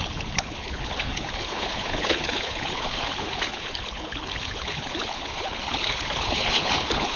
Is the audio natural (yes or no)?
no